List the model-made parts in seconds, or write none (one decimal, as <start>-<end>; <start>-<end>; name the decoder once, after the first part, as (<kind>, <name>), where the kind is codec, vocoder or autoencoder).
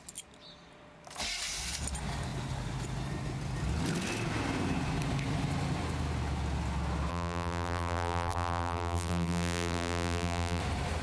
7.1-10.6 (vocoder, BigVGAN v2)